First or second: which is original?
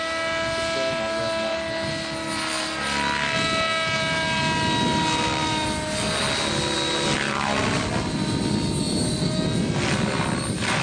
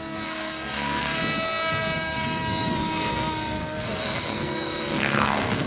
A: first